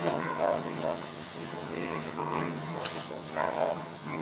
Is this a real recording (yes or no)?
no